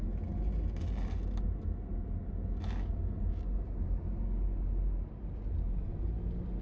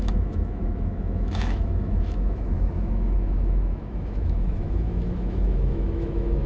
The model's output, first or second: second